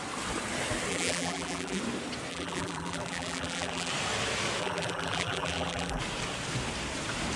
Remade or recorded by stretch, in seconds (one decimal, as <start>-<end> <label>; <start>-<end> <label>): 0.0-0.9 recorded; 0.9-1.8 remade; 1.8-2.3 recorded; 2.3-3.9 remade; 3.9-4.6 recorded; 4.6-6.0 remade; 6.0-7.4 recorded